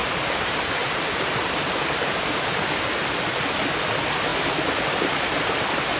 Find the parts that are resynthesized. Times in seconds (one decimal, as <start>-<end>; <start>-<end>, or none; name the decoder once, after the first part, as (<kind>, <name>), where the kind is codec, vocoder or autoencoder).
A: 0.0-3.6 (vocoder, BigVGAN v2)